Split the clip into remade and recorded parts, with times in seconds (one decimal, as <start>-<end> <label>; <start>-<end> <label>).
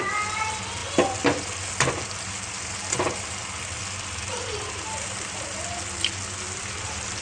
0.0-7.2 recorded